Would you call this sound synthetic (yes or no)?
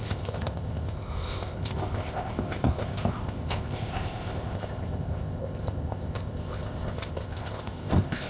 yes